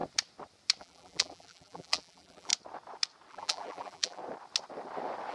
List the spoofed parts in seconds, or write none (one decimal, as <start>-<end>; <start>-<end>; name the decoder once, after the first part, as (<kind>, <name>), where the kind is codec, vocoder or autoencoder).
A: 0.8-2.5 (vocoder, BigVGAN v2); 3.3-4.2